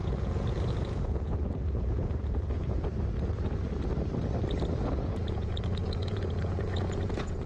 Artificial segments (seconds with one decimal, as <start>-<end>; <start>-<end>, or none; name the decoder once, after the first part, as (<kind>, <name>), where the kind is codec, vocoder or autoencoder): 0.0-2.9 (vocoder, Vocos); 4.8-7.5

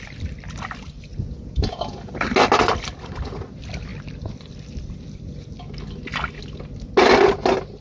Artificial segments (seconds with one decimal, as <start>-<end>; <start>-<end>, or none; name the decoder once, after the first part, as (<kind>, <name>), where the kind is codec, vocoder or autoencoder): 1.1-2.1 (vocoder, Vocos)